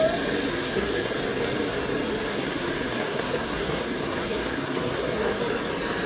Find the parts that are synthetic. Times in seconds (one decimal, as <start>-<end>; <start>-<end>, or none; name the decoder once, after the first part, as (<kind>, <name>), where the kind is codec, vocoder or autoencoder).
0.5-1.1 (codec, SNAC); 2.3-5.4